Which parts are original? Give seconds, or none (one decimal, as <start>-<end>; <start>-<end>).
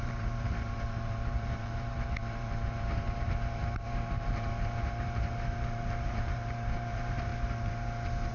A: 7.3-8.3